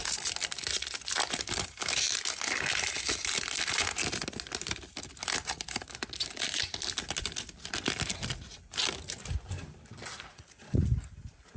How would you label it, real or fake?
real